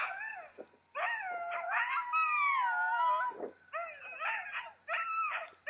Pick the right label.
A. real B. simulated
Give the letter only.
A